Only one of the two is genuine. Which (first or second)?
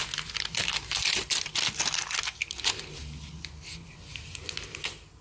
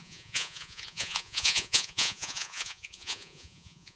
first